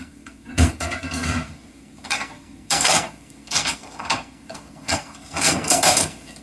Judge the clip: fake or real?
fake